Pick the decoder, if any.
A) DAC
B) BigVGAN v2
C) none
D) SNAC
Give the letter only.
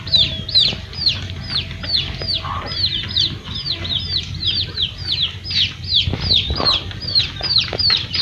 C